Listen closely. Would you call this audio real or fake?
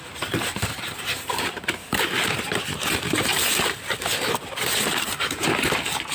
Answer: fake